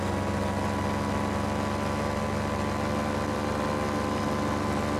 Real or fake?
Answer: real